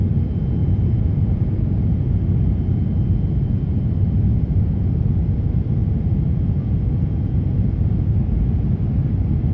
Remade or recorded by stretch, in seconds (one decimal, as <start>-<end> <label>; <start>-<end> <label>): 0.0-0.6 recorded; 0.6-2.0 remade; 2.0-4.3 recorded; 4.3-5.2 remade; 5.2-5.8 recorded; 5.8-7.5 remade; 7.5-9.5 recorded